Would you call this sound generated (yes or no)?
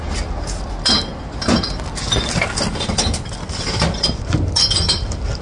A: no